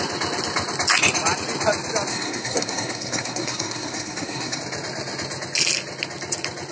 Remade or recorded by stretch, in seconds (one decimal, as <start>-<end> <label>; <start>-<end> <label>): 0.0-2.1 recorded; 2.1-4.6 remade; 4.6-6.7 recorded